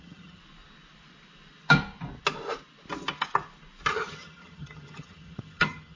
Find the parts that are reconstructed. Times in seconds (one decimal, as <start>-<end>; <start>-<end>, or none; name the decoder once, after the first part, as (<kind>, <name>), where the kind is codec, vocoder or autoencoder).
0.0-0.4 (vocoder, HiFi-GAN); 3.9-6.0